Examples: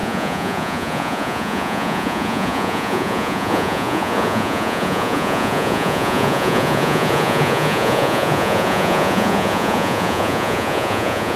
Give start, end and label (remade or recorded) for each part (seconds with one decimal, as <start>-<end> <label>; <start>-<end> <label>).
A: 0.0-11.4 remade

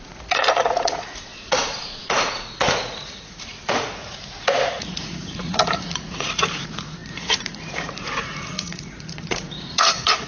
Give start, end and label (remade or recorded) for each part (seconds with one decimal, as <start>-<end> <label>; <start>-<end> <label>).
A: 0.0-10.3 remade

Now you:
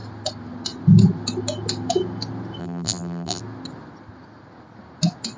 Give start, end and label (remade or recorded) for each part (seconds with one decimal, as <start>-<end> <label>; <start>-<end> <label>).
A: 0.0-2.6 recorded; 2.6-3.4 remade; 3.4-5.4 recorded

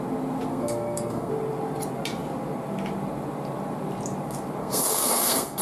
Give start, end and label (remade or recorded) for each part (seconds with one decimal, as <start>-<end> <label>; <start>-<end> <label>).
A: 0.0-0.5 recorded; 0.5-1.3 remade; 1.3-4.6 recorded; 4.6-5.6 remade

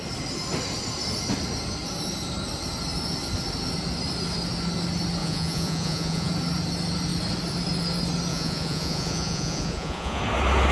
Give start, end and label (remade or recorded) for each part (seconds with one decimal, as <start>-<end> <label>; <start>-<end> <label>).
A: 0.0-5.2 recorded; 5.2-6.3 remade; 6.3-8.3 recorded; 8.3-10.2 remade; 10.2-10.7 recorded

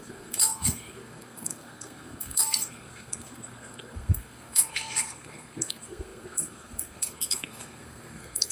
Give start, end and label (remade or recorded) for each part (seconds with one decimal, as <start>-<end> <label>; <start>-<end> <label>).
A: 0.0-8.5 remade

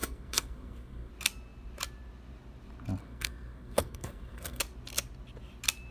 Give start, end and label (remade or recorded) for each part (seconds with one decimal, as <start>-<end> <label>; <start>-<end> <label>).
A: 0.0-1.1 remade; 1.1-3.0 recorded; 3.0-4.6 remade; 4.6-5.9 recorded

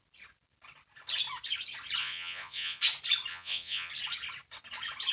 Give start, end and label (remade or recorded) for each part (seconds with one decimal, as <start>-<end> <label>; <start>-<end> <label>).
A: 0.0-2.0 recorded; 2.0-2.8 remade; 2.8-3.3 recorded; 3.3-3.9 remade; 3.9-5.1 recorded